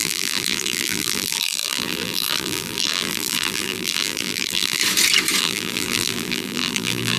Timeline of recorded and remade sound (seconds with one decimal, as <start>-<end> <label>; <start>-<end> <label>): 0.0-4.8 remade; 4.8-5.4 recorded; 5.4-7.2 remade